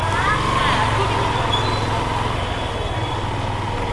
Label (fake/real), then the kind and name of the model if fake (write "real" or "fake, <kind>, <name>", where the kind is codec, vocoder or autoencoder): real